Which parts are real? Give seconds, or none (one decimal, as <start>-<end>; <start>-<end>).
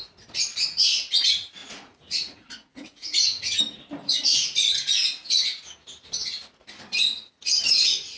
0.0-1.6; 3.6-8.2